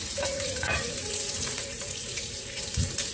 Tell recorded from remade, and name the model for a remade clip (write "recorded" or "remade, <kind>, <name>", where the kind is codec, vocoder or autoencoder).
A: remade, vocoder, Vocos